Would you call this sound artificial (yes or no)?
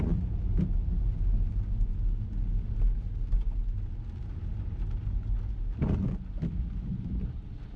no